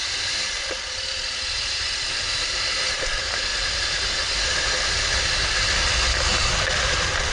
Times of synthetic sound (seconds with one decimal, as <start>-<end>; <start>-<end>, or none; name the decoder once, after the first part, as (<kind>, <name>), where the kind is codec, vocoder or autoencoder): 0.0-3.5 (vocoder, BigVGAN v2); 6.3-7.3